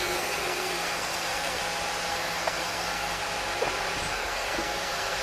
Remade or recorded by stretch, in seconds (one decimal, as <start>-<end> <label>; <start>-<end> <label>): 0.0-1.6 remade; 1.6-2.1 recorded; 2.1-3.2 remade; 3.2-4.1 recorded; 4.1-5.2 remade